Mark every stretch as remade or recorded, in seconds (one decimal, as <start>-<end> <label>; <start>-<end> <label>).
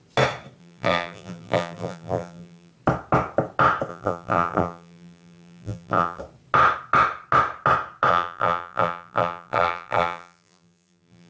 0.0-0.6 recorded; 0.6-2.7 remade; 2.7-3.9 recorded; 3.9-6.2 remade; 6.2-8.1 recorded; 8.1-11.3 remade